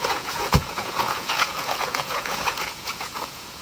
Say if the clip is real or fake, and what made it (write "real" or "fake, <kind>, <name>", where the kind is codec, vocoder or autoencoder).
fake, vocoder, Vocos